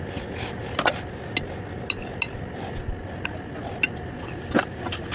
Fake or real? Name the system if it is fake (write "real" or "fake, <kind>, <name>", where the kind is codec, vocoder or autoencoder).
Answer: real